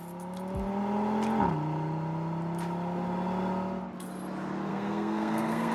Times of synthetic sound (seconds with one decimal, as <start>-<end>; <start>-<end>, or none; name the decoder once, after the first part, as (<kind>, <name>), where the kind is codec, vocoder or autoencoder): 4.7-5.7 (codec, SNAC)